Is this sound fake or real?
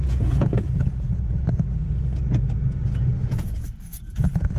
fake